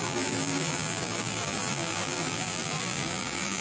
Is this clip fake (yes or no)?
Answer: yes